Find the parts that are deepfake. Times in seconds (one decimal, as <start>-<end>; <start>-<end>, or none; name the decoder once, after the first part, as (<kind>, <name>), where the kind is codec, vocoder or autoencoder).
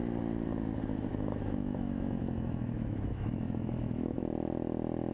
1.1-4.2 (autoencoder, DAC-VAE)